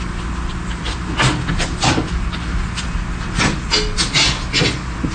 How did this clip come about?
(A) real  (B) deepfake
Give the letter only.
A